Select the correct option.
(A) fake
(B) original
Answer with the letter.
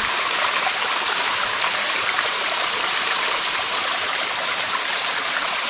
A